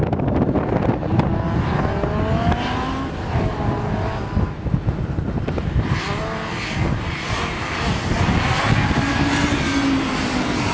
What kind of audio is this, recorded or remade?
recorded